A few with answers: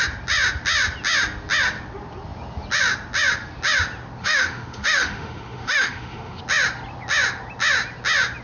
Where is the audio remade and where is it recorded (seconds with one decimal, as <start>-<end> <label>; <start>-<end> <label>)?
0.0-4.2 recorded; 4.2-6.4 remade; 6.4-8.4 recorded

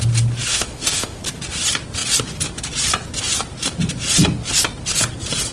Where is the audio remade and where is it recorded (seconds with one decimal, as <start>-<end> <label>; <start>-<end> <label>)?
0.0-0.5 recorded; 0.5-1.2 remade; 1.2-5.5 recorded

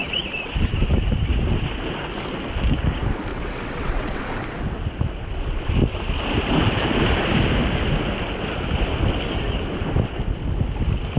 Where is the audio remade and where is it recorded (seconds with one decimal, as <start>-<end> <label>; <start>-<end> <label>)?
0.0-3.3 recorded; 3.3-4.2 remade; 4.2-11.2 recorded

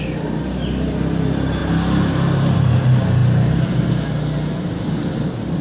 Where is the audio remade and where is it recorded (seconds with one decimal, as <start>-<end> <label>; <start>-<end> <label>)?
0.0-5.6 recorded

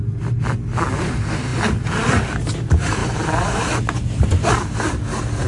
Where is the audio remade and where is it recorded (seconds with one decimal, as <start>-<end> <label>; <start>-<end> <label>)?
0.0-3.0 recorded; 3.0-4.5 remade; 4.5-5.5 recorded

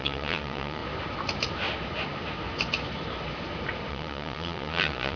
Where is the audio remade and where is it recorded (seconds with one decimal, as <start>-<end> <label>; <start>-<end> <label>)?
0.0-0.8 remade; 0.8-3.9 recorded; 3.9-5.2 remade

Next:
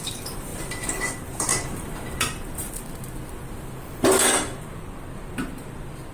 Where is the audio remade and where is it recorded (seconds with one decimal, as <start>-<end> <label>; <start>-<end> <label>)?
0.0-6.1 remade